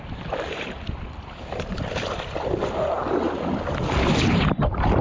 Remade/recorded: remade